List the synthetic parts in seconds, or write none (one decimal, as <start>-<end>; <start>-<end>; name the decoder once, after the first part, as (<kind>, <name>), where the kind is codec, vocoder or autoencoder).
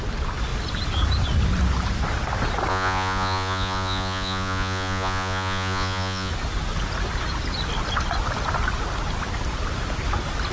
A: 2.7-6.3 (vocoder, Vocos)